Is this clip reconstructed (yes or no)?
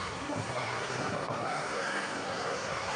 yes